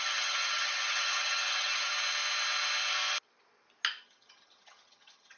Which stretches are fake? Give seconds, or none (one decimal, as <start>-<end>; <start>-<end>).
0.0-1.9; 4.0-5.4